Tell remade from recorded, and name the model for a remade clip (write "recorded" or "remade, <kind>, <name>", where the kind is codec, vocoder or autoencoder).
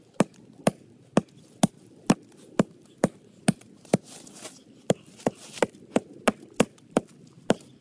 recorded